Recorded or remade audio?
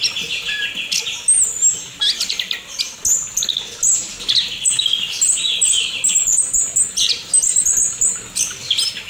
recorded